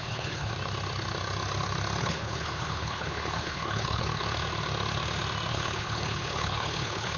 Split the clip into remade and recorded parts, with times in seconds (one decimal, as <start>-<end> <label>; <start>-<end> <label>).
0.0-0.5 remade; 0.5-2.0 recorded; 2.0-4.2 remade; 4.2-5.5 recorded; 5.5-7.2 remade